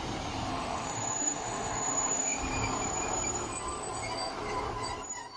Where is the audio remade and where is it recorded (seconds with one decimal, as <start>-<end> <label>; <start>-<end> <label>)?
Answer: 0.0-0.5 recorded; 0.5-2.4 remade; 2.4-5.4 recorded